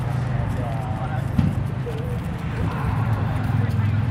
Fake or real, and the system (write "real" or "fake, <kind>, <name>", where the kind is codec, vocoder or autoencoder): fake, vocoder, BigVGAN v2